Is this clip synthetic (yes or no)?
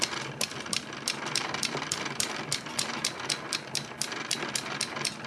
no